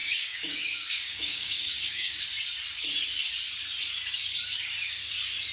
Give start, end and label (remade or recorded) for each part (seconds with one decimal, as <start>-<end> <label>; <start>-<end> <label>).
0.0-2.2 remade; 2.2-5.5 recorded